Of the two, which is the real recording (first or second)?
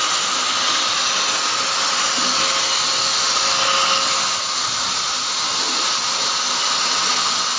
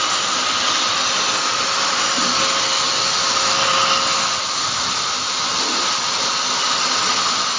first